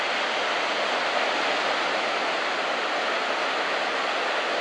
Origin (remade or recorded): recorded